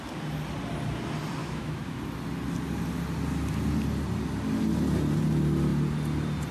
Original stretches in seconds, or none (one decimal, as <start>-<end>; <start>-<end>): 0.0-1.4; 2.0-6.5